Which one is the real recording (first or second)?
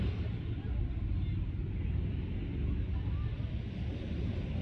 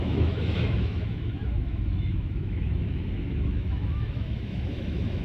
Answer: first